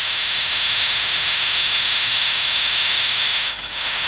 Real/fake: fake